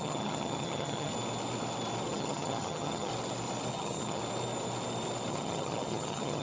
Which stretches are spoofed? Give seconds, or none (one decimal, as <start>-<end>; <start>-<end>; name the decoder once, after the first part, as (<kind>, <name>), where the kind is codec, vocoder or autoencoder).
0.0-1.1 (vocoder, HiFi-GAN); 2.1-3.1; 3.7-4.2; 5.3-6.4